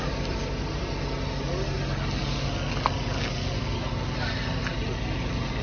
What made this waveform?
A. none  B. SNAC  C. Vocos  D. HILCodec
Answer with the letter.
A